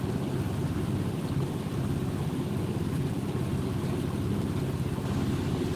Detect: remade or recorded recorded